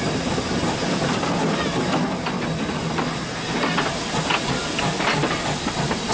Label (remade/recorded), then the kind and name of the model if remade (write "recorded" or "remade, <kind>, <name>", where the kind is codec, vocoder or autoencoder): recorded